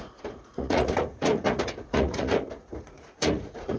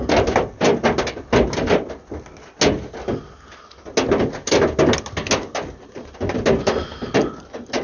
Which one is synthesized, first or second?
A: first